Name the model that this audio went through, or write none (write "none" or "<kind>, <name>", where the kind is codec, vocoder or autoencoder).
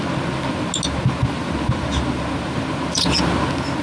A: none